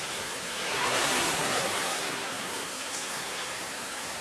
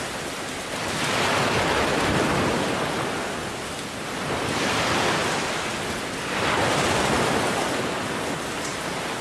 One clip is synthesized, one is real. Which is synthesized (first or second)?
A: first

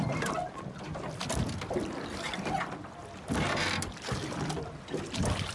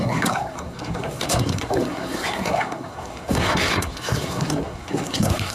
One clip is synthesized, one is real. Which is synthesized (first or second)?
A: second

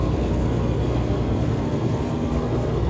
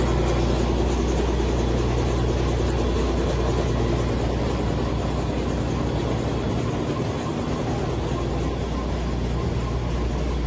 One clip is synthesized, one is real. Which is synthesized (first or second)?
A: first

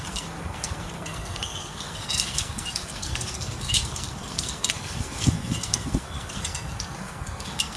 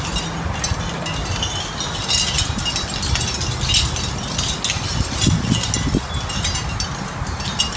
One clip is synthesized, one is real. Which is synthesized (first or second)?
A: first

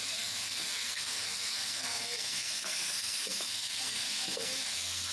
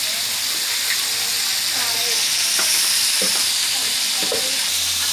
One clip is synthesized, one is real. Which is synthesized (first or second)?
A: first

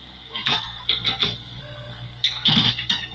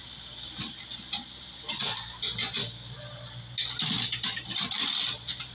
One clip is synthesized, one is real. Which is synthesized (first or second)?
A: first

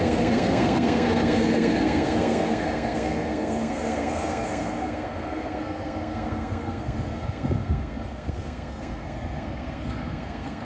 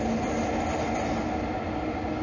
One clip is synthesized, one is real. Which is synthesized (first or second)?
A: first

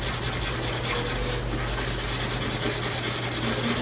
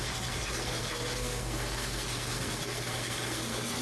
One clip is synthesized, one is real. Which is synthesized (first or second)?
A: second